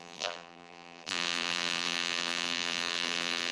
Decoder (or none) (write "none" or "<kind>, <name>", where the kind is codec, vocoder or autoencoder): vocoder, BigVGAN v2